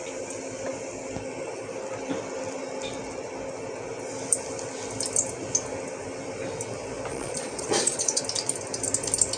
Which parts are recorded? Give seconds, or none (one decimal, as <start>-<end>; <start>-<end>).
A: 0.0-7.1; 8.2-9.4